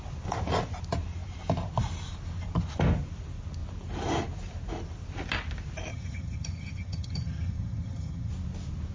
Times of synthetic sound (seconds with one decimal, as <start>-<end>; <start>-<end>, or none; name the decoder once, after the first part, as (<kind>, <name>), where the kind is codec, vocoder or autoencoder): 5.9-8.3 (vocoder, HiFi-GAN)